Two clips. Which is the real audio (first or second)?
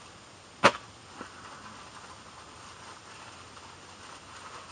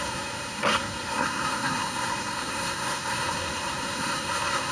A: first